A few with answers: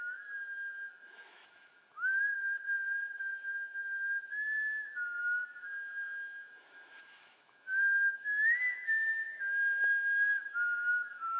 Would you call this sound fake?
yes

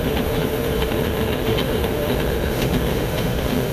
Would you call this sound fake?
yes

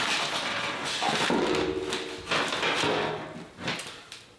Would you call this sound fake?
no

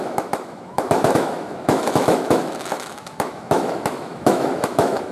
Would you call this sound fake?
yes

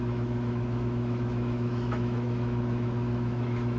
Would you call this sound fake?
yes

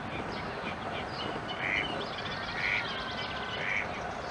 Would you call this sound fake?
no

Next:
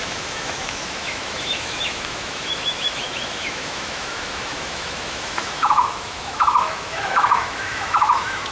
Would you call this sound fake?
yes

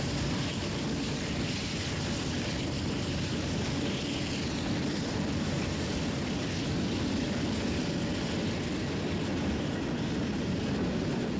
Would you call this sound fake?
no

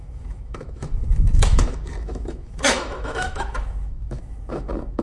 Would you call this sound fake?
yes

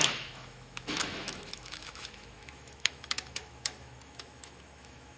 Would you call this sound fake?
yes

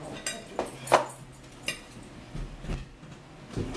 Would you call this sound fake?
no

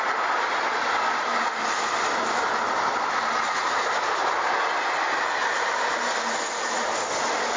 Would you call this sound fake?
no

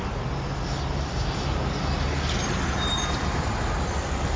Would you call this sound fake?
no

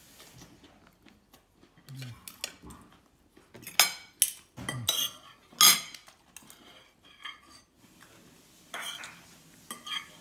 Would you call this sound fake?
no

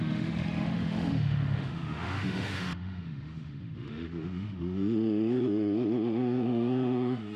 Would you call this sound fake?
yes